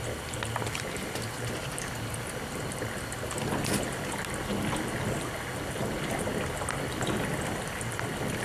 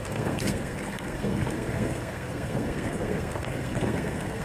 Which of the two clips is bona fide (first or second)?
first